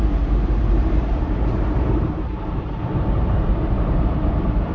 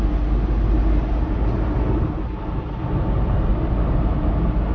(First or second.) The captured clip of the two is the second